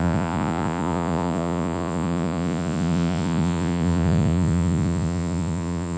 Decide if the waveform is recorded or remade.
remade